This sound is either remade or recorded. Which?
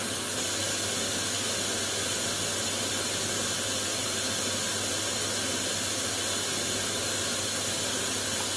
recorded